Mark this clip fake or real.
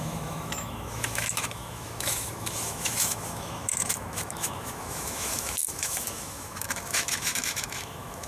fake